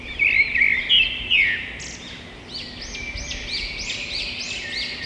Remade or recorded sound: recorded